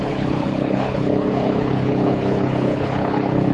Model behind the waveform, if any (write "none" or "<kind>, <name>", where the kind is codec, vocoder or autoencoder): codec, HILCodec